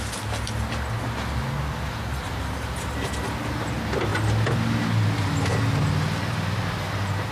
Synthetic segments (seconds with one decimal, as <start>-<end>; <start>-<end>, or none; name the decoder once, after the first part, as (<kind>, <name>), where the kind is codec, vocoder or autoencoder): none